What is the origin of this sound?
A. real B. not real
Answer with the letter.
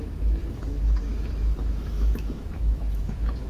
B